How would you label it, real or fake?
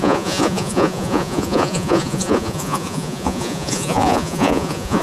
fake